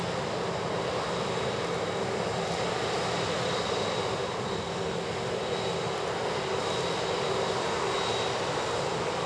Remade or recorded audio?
recorded